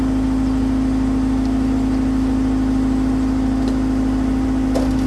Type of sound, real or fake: real